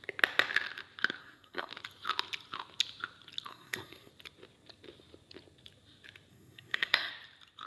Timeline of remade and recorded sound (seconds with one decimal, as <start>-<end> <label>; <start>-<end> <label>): 0.0-1.2 recorded; 1.2-1.7 remade; 1.7-3.5 recorded; 3.5-4.1 remade; 4.1-6.3 recorded; 6.3-7.1 remade; 7.1-7.7 recorded